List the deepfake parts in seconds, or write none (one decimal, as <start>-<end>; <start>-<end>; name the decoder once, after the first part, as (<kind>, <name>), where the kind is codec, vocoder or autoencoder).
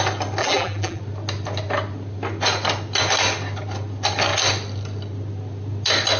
0.4-1.0 (vocoder, BigVGAN v2)